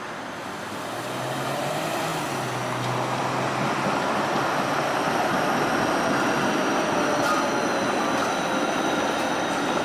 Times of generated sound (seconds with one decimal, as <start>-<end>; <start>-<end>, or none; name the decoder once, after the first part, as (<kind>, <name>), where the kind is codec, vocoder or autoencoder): none